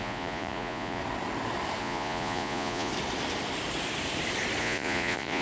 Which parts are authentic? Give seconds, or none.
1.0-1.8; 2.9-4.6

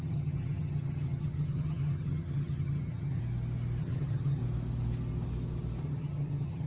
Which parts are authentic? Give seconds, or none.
3.2-3.8; 4.4-5.8

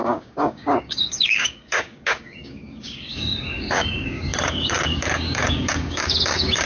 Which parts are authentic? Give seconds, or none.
none

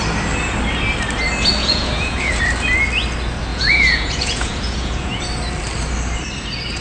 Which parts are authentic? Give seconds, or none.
0.0-1.6; 2.4-3.5; 5.2-6.8

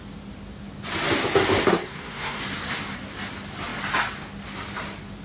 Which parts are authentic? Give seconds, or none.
0.0-1.7; 2.4-5.2

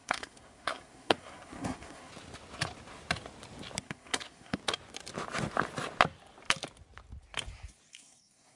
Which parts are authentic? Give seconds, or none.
2.1-3.8; 4.6-7.9

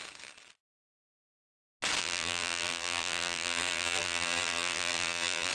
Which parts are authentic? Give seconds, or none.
0.0-2.0

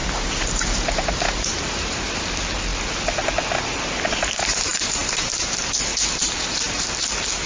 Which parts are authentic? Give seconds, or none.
1.5-4.5; 5.2-7.5